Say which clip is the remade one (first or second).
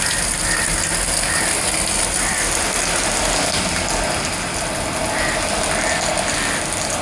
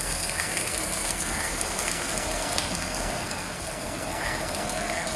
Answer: second